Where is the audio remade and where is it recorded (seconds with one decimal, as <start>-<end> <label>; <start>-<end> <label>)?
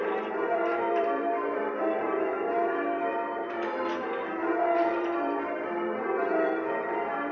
0.0-7.3 remade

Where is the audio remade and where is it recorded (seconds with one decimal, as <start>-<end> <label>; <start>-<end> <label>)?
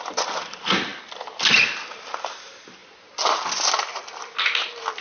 0.0-5.0 recorded